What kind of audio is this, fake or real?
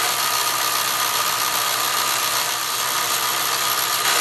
fake